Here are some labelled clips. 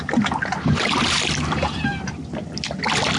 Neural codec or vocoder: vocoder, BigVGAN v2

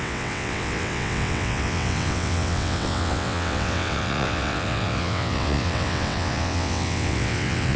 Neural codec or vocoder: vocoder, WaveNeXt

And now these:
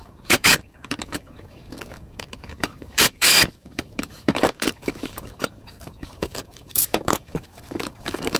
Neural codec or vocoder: codec, DAC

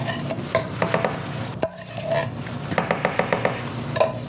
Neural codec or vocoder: none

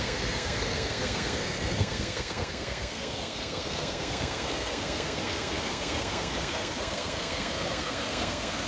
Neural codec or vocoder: codec, SNAC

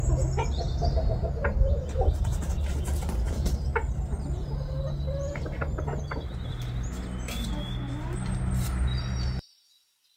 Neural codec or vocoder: none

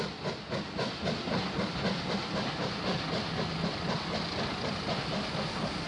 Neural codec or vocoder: none